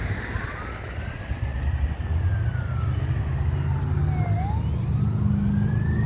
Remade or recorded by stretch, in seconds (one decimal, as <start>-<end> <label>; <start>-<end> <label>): 0.0-6.1 recorded